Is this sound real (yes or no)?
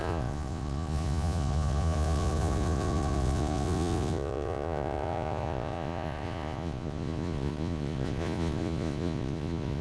no